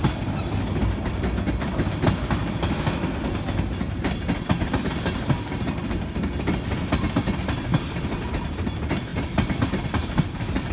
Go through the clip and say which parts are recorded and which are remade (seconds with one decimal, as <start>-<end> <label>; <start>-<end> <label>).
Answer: 0.0-10.7 recorded